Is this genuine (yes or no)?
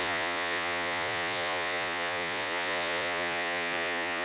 no